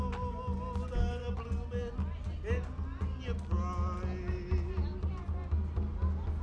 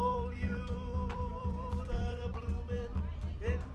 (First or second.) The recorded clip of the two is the first